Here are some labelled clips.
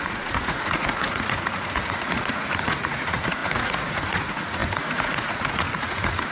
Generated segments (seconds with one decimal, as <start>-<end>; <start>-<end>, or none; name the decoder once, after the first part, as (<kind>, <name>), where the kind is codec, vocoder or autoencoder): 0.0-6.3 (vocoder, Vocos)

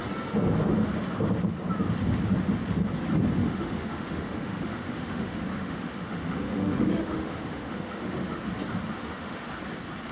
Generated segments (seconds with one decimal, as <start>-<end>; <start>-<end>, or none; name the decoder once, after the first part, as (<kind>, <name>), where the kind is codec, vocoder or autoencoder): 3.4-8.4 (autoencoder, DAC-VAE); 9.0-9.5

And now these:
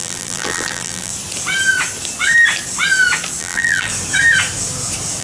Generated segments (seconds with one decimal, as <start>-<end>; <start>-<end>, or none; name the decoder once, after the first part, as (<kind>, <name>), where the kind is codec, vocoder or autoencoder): 0.0-1.1 (vocoder, BigVGAN v2); 3.4-3.9